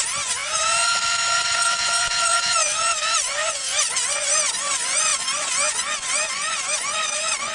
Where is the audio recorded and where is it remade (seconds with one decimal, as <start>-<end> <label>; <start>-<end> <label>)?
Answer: 0.0-7.5 remade